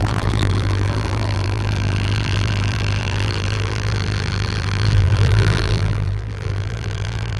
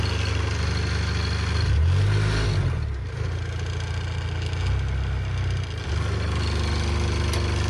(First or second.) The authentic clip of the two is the second